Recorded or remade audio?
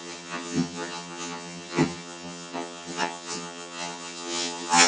remade